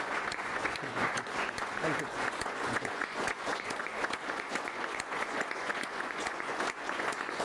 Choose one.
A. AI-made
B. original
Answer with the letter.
A